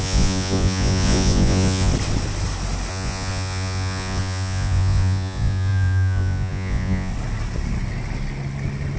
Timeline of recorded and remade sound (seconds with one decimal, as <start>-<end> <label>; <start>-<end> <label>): 0.0-1.9 remade; 1.9-2.9 recorded; 2.9-7.1 remade; 7.1-9.0 recorded